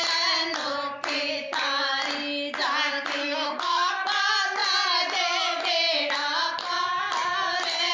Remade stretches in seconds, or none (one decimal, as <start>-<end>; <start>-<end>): 3.2-3.9